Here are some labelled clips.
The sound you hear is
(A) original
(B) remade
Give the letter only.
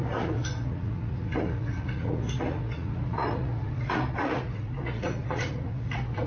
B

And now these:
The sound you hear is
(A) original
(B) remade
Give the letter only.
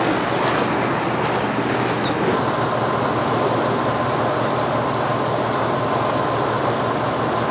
A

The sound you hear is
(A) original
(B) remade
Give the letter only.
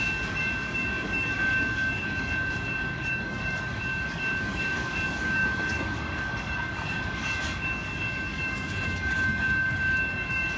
B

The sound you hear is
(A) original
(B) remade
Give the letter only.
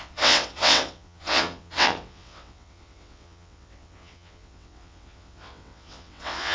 B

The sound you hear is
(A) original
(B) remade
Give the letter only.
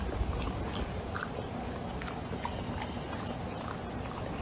A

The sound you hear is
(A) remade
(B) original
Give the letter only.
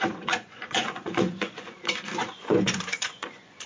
A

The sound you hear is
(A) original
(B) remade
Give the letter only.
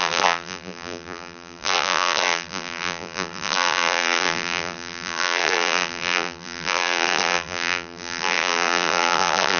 B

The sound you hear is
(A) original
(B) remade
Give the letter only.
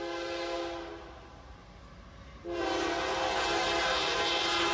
A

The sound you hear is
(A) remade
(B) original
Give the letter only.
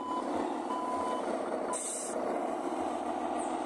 B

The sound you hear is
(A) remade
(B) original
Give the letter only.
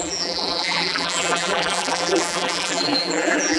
A